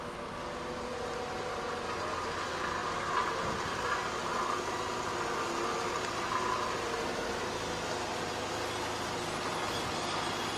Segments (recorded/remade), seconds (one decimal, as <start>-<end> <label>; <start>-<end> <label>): 0.0-10.6 recorded